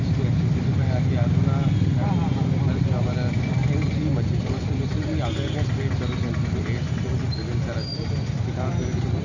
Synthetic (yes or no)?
no